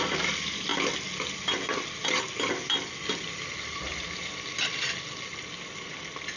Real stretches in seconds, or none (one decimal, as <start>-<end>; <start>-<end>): 0.0-6.4